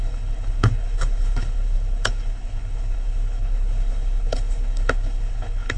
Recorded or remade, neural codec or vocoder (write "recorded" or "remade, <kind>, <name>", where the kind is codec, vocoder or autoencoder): remade, codec, HILCodec